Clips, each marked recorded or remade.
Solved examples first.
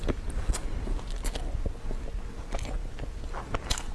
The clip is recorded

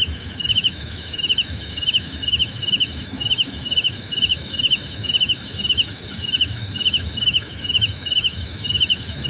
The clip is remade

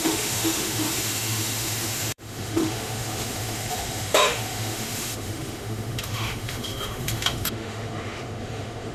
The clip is remade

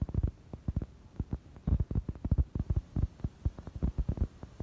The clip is recorded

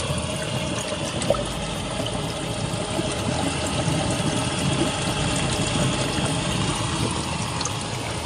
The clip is recorded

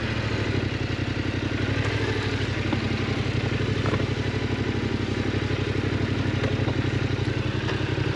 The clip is recorded